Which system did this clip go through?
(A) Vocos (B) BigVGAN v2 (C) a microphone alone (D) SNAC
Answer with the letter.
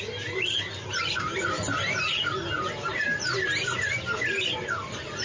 C